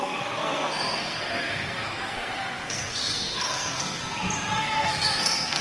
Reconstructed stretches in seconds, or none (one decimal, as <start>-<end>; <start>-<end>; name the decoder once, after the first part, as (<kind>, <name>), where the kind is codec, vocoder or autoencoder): 0.0-4.0 (codec, SNAC); 4.6-5.6